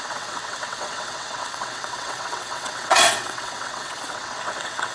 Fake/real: fake